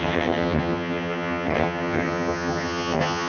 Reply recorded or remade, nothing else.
remade